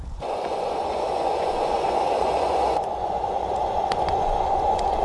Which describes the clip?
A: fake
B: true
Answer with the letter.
A